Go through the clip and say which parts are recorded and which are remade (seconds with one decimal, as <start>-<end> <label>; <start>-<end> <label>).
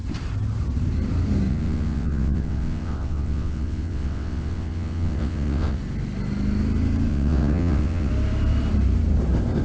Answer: 0.0-1.5 recorded; 1.5-5.8 remade; 5.8-7.1 recorded; 7.1-8.1 remade; 8.1-9.6 recorded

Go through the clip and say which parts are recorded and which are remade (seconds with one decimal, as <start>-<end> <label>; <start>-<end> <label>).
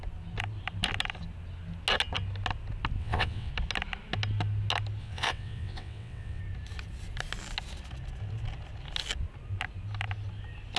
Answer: 0.0-3.0 recorded; 3.0-3.5 remade; 3.5-5.0 recorded; 5.0-6.4 remade; 6.4-10.8 recorded